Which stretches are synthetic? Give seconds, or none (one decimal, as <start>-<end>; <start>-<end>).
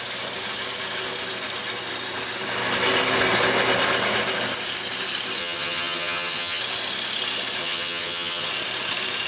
5.4-6.6; 7.6-8.5